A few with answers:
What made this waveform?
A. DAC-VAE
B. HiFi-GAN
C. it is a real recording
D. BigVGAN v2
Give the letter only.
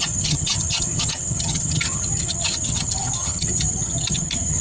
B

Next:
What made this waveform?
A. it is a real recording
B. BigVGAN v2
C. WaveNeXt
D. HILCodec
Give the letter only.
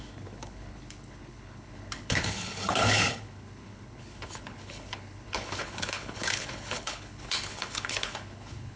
D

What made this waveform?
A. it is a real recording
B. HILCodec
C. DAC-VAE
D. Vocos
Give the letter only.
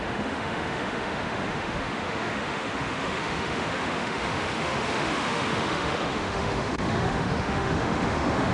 C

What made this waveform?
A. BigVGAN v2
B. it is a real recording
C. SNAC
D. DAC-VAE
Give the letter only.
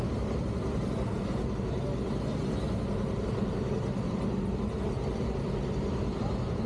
B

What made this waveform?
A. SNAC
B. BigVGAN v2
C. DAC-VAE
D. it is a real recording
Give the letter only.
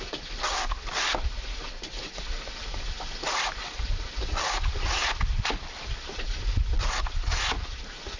D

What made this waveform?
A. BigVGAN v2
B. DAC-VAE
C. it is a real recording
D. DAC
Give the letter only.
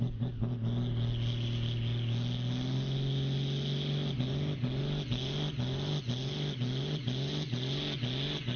C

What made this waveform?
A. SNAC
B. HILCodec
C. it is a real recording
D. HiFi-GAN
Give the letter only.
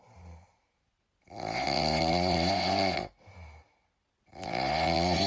C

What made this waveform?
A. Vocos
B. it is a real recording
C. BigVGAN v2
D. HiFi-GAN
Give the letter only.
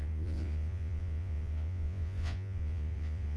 A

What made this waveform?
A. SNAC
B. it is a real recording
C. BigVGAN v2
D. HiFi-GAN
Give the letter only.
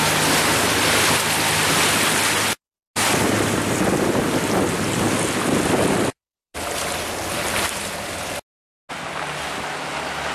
B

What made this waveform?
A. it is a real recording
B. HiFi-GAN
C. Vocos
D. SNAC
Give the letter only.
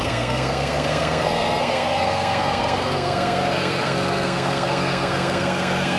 D